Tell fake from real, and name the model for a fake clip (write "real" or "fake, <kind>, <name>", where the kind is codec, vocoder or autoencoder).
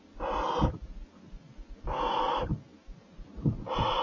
real